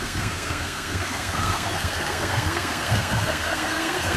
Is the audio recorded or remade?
remade